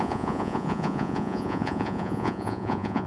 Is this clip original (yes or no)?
no